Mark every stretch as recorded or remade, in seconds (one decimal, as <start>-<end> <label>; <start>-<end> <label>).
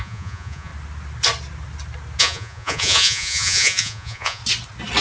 0.0-0.7 remade; 0.7-2.2 recorded; 2.2-4.4 remade; 4.4-5.0 recorded